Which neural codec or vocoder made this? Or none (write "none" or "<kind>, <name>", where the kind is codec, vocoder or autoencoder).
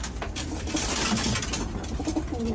none